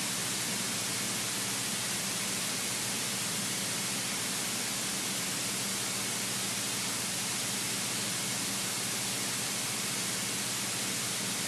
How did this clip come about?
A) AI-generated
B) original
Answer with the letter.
B